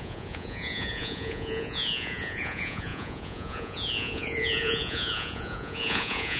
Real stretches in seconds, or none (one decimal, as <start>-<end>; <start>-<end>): none